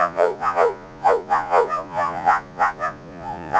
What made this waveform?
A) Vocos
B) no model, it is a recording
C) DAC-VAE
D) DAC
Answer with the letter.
A